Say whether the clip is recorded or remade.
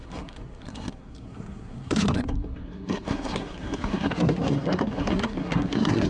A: remade